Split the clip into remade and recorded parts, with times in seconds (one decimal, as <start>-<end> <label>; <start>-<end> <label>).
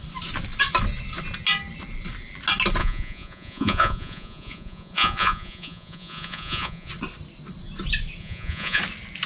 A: 0.0-2.8 recorded; 2.8-6.9 remade; 6.9-8.2 recorded; 8.2-8.8 remade; 8.8-9.3 recorded